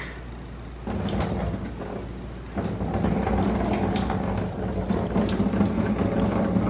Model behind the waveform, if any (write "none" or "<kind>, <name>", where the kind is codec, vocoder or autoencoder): none